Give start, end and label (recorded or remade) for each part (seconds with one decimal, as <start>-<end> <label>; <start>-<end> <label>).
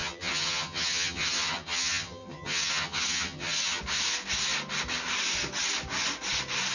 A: 0.0-3.8 remade; 3.8-6.7 recorded